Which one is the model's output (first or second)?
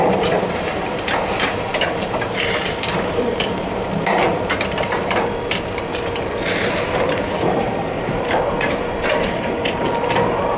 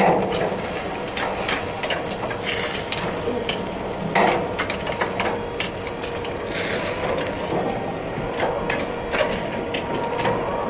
first